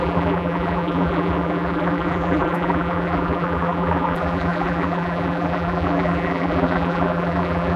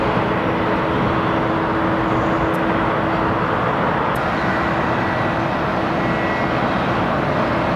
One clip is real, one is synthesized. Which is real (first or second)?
second